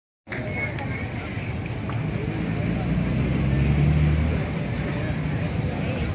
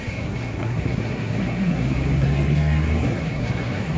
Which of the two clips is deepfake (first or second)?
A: second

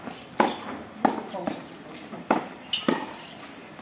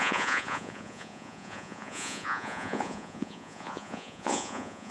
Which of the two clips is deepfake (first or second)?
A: second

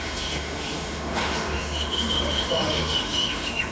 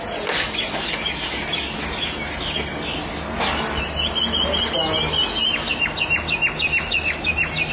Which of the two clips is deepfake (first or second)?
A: first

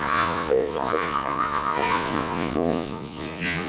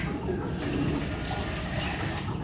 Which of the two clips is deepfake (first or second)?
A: first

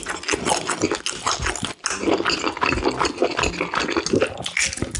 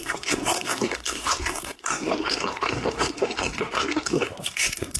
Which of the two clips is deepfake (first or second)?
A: second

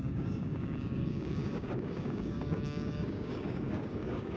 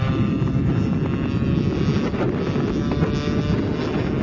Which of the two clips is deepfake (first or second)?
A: first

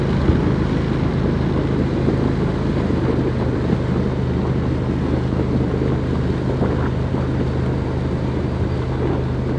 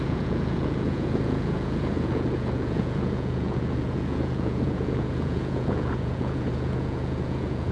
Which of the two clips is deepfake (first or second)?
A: second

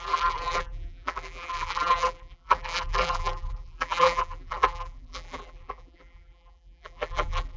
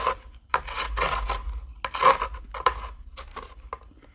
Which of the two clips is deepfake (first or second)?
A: first